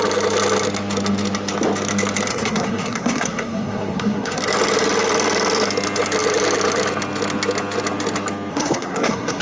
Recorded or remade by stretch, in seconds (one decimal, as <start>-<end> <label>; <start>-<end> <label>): 0.0-2.3 recorded; 2.3-4.4 remade; 4.4-8.5 recorded; 8.5-9.4 remade